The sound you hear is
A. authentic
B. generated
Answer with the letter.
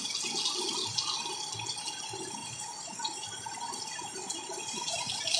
A